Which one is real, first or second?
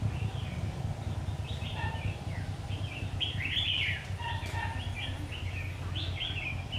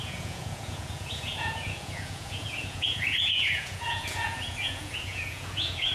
first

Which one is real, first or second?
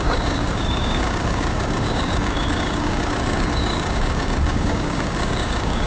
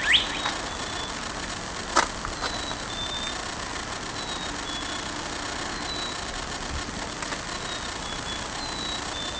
second